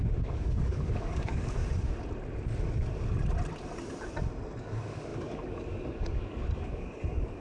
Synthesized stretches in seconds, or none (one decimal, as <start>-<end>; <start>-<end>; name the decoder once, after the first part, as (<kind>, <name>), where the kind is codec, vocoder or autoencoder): 0.0-1.6 (codec, DAC); 4.6-7.4